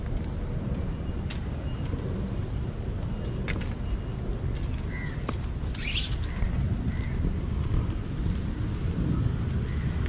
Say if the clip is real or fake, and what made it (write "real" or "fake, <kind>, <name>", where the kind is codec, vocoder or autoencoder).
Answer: real